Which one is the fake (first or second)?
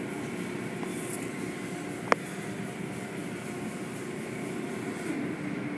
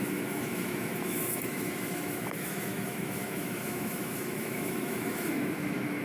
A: second